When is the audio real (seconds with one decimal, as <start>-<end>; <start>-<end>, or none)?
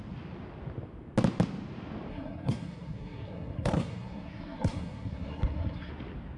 0.0-2.1; 5.9-6.4